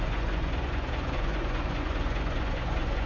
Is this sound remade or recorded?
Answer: remade